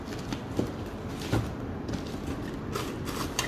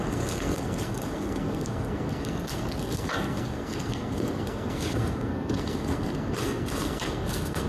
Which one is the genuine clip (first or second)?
first